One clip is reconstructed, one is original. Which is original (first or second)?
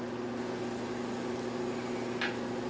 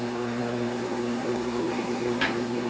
first